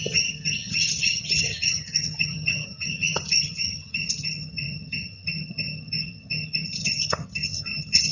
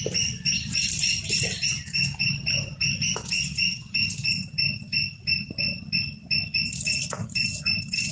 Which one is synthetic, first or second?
first